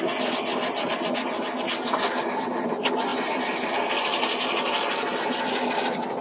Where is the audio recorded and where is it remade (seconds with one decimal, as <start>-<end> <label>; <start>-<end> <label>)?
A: 0.0-6.2 recorded